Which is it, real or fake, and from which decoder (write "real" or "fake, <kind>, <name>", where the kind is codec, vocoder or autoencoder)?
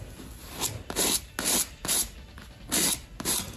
real